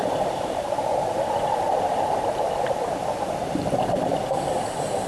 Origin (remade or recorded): recorded